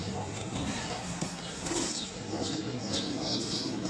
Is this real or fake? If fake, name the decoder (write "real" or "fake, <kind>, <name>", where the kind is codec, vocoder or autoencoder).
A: fake, codec, SNAC